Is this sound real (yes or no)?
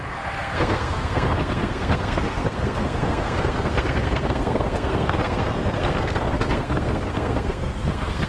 no